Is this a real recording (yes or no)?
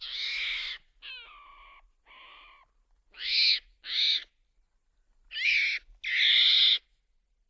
yes